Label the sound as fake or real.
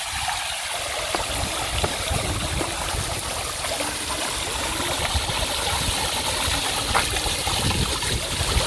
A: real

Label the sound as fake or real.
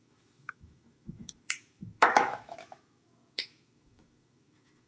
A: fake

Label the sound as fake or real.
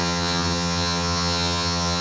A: fake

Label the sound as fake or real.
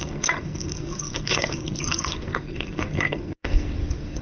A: fake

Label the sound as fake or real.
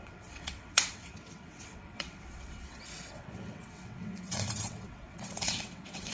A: fake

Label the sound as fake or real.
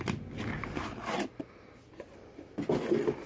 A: real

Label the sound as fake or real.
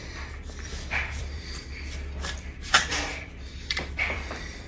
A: fake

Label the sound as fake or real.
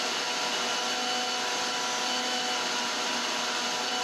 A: real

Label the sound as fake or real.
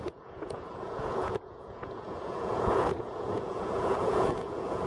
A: fake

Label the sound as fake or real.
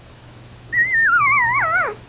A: fake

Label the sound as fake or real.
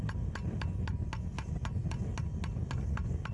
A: real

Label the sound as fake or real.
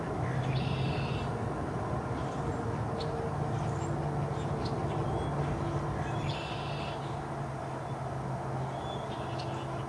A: real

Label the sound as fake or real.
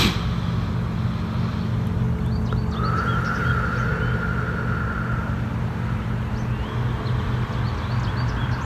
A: real